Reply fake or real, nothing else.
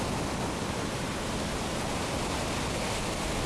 real